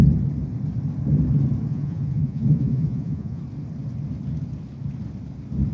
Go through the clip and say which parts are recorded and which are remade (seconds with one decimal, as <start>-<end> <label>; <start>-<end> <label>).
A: 0.0-1.7 recorded; 1.7-3.4 remade; 3.4-5.7 recorded